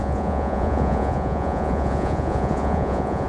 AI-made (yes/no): yes